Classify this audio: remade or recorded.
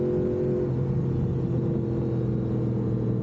recorded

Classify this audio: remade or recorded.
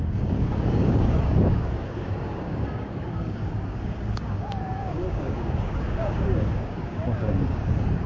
remade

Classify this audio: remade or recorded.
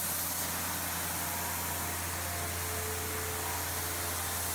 recorded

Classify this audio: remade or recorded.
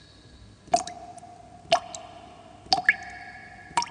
recorded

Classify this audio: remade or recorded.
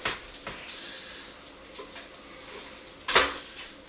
recorded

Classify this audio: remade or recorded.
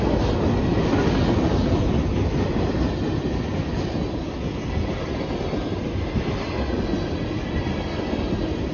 recorded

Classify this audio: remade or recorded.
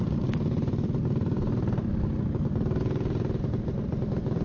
recorded